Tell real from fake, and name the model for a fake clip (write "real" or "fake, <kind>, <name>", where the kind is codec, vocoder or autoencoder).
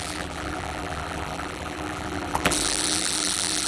fake, vocoder, BigVGAN v2